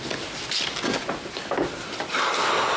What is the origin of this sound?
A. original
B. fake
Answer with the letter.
A